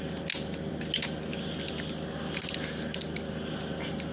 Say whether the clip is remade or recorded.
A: recorded